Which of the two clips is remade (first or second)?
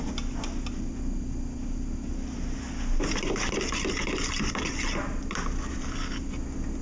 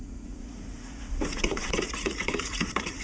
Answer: second